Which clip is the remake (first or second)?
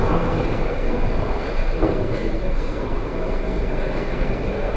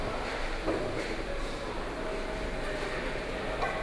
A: first